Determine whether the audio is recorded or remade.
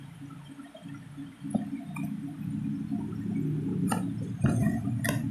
recorded